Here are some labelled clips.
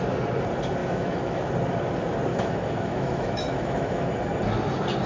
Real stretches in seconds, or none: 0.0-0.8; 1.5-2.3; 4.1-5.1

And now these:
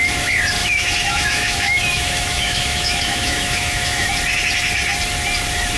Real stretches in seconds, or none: 0.0-0.6; 4.1-5.8

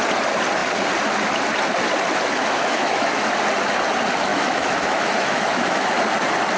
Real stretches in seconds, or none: 0.0-2.4; 3.3-4.3; 5.9-6.6

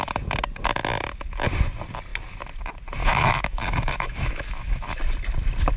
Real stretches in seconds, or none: 0.0-3.0; 5.0-5.8

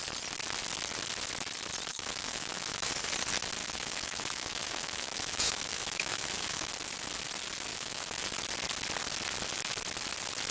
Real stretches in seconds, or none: 0.0-1.9; 2.9-3.6; 6.7-7.7; 8.3-10.5